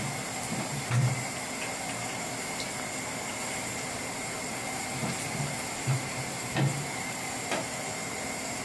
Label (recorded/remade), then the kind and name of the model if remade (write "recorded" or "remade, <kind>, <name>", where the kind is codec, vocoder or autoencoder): remade, vocoder, BigVGAN v2